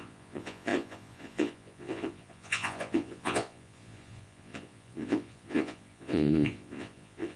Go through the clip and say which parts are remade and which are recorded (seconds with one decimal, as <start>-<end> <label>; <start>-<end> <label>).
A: 0.0-7.4 remade